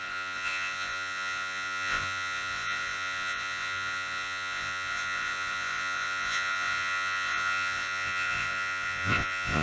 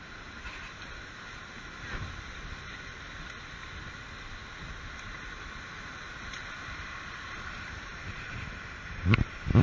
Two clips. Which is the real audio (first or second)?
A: second